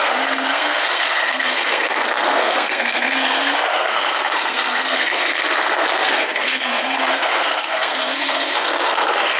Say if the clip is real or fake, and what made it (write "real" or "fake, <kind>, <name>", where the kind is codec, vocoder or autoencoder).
fake, codec, SNAC